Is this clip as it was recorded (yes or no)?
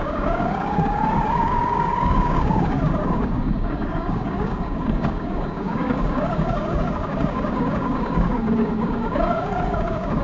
no